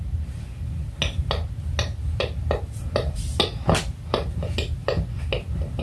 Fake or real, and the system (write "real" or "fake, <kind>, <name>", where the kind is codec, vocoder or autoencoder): real